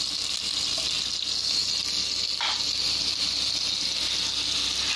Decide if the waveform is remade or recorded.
recorded